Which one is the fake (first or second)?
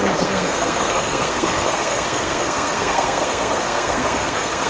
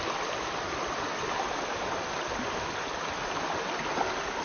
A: first